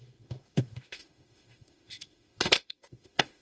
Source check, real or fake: fake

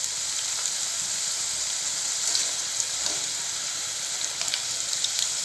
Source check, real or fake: real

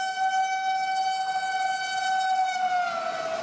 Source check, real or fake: real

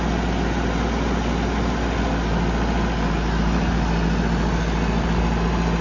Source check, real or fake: real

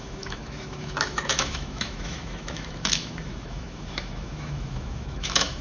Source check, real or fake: fake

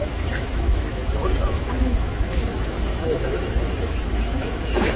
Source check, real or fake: fake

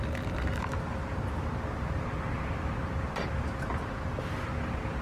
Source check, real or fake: real